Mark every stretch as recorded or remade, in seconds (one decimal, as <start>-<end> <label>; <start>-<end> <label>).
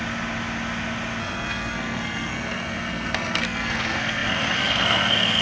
0.0-1.2 recorded; 1.2-5.4 remade